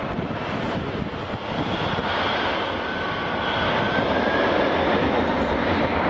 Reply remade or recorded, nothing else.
recorded